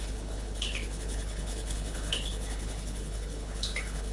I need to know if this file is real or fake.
fake